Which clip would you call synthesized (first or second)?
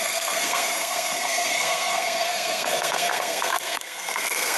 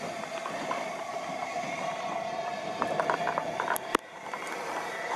first